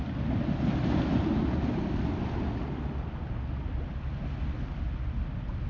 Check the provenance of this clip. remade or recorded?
recorded